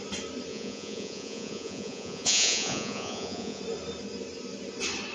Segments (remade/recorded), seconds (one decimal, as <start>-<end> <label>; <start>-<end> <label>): 0.0-0.5 recorded; 0.5-3.6 remade; 3.6-5.1 recorded